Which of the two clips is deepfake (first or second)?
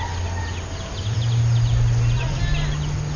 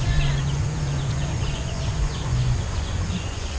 second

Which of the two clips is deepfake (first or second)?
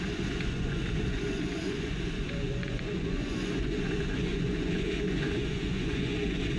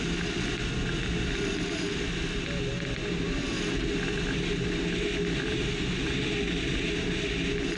first